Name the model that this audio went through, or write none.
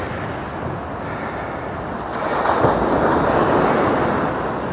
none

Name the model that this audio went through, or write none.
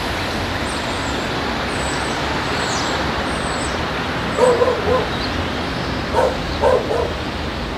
none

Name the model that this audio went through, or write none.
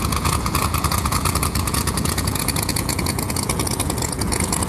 vocoder, Vocos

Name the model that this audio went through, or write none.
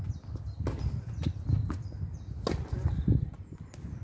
none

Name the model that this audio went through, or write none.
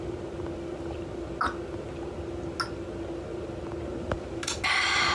none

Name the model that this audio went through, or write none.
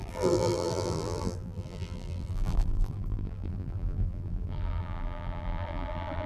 vocoder, BigVGAN v2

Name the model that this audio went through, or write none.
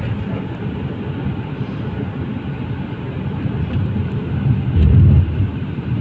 none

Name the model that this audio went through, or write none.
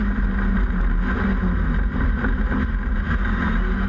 none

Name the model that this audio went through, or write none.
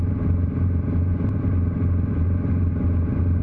vocoder, BigVGAN v2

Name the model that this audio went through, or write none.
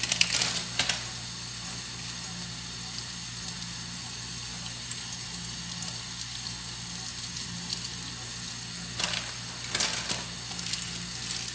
none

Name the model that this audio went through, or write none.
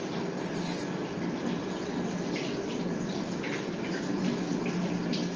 none